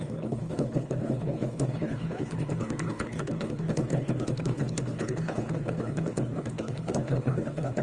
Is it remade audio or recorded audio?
remade